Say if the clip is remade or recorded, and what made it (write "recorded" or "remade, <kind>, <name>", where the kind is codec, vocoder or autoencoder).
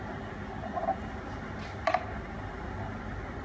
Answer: recorded